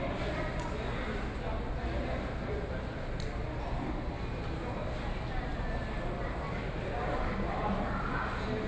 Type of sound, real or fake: real